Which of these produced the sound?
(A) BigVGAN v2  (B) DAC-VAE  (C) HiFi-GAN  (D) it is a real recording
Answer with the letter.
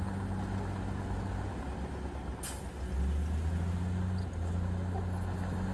D